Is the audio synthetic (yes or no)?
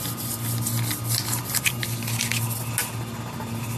no